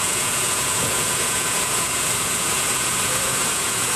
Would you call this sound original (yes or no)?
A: no